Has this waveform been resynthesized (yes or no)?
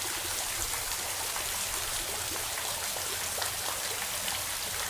no